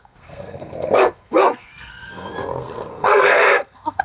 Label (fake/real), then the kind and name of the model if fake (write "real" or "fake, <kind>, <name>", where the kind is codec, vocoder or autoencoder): fake, codec, SNAC